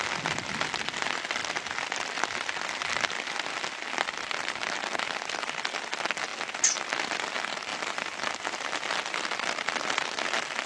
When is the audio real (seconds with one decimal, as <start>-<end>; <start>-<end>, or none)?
0.0-7.7; 9.0-10.7